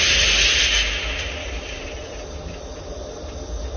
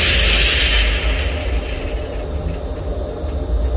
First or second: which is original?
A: second